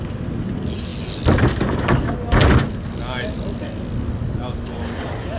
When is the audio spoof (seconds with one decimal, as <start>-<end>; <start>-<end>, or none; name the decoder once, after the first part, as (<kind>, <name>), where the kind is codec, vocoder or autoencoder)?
none